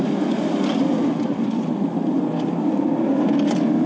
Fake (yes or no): yes